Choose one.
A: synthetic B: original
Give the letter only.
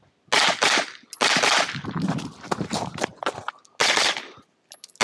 B